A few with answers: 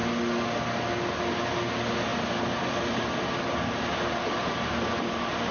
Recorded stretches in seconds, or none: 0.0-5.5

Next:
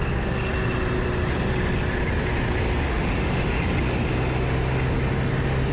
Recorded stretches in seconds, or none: 0.0-2.9; 3.6-5.7

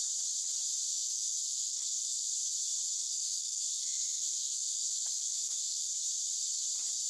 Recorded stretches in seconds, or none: 0.0-0.9; 2.3-3.0; 5.9-7.1

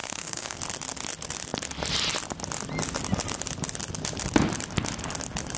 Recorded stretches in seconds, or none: 0.6-5.6

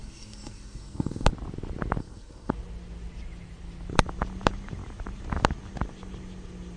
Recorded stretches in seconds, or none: 1.3-2.0; 2.5-6.8

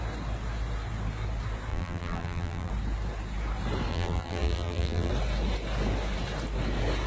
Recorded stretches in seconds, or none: 0.0-1.7; 2.7-3.9; 5.1-7.1